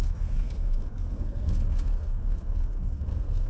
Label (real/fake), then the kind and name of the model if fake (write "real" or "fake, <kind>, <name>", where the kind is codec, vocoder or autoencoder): fake, codec, SNAC